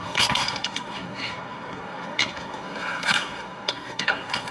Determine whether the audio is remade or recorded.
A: remade